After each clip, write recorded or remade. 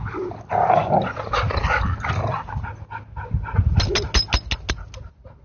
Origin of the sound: recorded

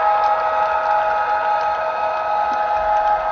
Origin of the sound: recorded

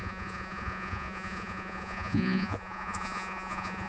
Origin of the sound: remade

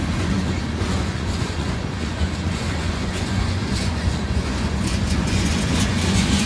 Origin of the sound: remade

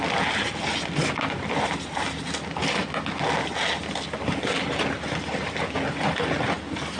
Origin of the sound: recorded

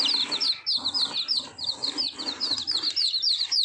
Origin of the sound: recorded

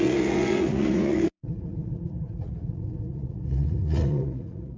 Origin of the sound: remade